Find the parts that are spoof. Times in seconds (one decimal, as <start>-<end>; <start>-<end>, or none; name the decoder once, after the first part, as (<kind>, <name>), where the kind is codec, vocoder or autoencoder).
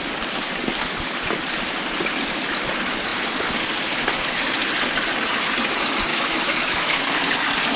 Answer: 6.1-7.0 (autoencoder, DAC-VAE)